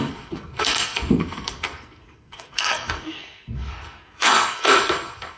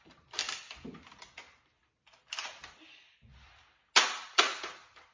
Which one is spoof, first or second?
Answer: first